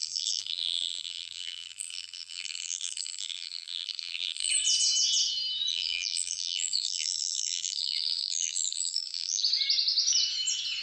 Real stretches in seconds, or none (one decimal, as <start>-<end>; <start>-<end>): 4.5-5.7; 9.4-10.8